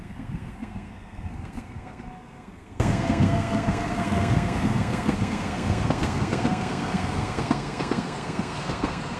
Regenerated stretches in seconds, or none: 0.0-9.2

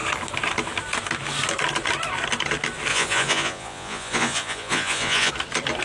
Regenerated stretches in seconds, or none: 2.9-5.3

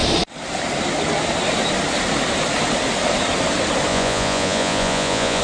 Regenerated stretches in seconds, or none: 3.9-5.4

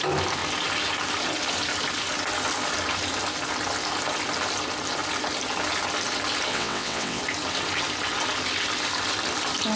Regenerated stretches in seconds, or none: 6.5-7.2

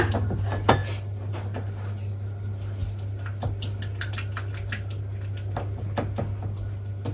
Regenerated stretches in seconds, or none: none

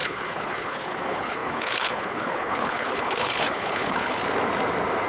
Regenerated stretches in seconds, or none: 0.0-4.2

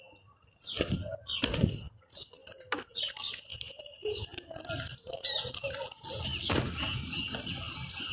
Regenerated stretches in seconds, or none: none